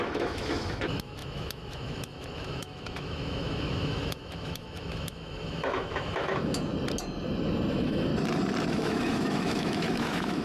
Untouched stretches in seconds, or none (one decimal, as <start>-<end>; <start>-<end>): 6.7-7.7; 8.1-8.7